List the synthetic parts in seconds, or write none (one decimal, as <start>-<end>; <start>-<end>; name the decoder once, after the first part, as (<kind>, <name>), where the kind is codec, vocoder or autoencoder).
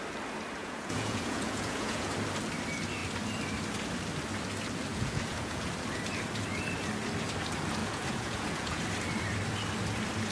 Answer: 0.6-2.1 (vocoder, Vocos); 4.9-5.7; 7.8-8.8